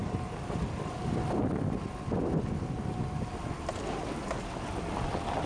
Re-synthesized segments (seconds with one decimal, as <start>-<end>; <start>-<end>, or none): 0.0-1.3